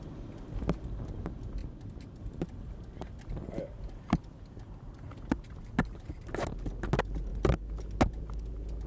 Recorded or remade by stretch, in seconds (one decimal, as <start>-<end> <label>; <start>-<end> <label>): 0.0-8.9 recorded